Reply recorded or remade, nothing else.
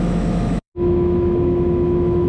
remade